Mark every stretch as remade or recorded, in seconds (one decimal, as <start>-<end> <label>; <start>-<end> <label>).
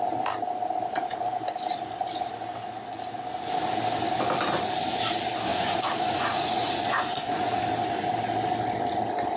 0.0-5.5 recorded; 5.5-7.6 remade; 7.6-9.4 recorded